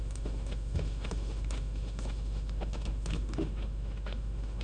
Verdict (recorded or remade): remade